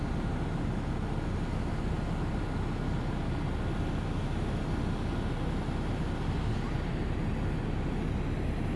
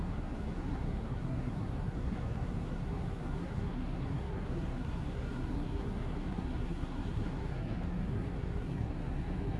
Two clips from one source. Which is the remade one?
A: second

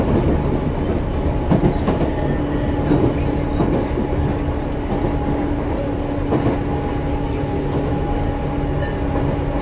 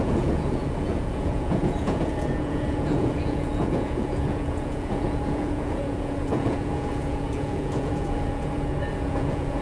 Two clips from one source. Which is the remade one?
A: second